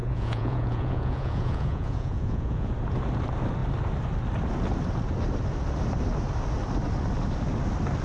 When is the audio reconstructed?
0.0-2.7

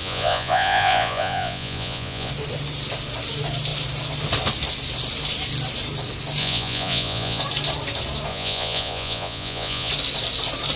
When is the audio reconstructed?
0.0-2.3; 6.4-7.4; 8.3-9.9

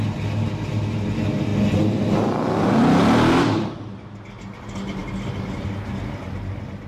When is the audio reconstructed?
none

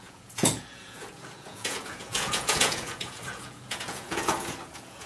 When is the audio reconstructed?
0.0-5.1

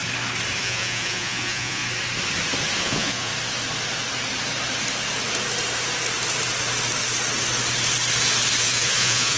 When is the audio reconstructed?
0.6-1.8; 2.8-3.3; 8.6-9.4